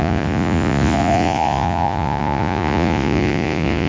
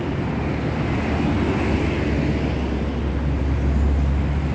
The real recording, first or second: second